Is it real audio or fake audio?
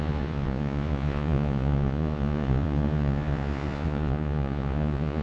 fake